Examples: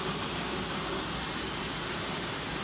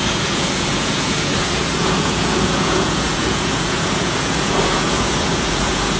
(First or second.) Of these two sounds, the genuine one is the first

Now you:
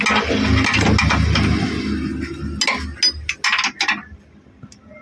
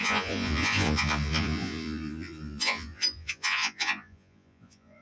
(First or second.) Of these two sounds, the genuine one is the first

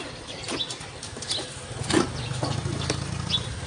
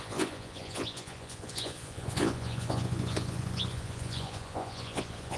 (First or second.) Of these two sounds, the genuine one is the first